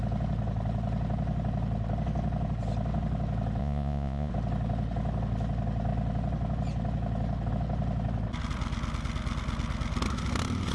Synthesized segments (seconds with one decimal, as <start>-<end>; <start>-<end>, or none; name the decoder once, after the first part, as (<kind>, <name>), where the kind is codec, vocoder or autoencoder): 3.6-4.3 (vocoder, Vocos)